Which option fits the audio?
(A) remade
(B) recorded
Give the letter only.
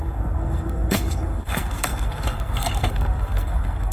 A